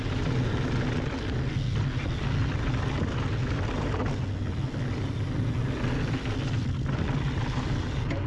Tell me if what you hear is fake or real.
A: real